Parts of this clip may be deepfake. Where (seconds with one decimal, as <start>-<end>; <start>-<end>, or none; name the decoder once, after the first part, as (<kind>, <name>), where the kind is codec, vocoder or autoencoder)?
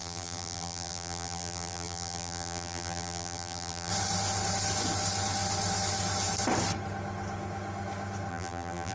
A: 0.0-3.9 (vocoder, BigVGAN v2); 8.3-8.9